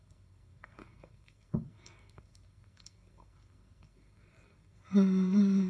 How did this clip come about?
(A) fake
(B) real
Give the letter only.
A